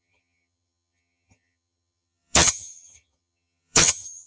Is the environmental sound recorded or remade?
remade